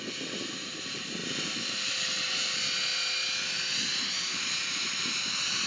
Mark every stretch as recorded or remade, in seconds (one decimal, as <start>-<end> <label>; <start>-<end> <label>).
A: 0.0-5.7 recorded